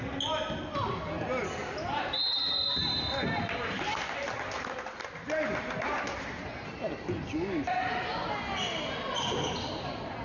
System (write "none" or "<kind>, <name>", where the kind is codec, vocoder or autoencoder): none